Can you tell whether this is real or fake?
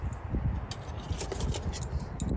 real